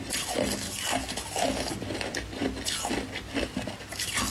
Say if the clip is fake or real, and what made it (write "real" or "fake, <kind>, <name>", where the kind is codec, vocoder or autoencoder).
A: real